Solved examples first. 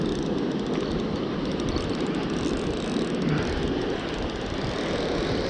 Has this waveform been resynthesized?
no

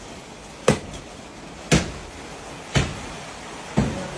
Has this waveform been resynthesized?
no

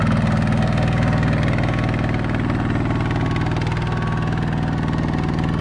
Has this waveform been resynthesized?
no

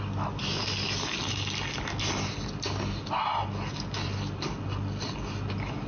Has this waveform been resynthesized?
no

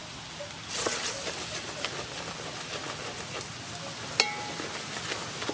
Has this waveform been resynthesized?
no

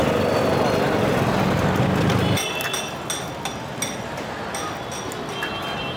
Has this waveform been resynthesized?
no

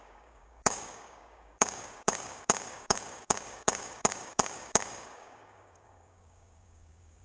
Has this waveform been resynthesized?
yes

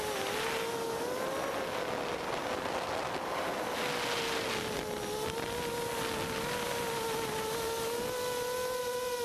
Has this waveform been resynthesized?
no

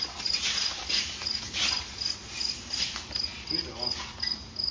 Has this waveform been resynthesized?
no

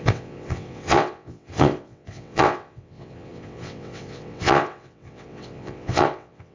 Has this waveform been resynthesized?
yes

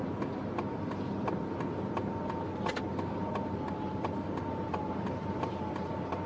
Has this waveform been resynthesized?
no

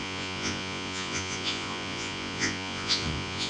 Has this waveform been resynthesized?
yes